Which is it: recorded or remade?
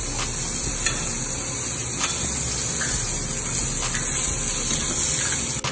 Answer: recorded